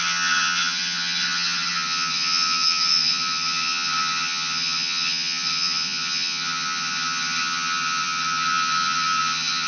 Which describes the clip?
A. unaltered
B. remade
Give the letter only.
B